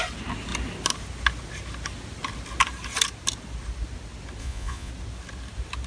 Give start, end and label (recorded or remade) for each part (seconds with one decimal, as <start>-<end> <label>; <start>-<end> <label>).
0.0-4.4 recorded; 4.4-4.9 remade; 4.9-5.9 recorded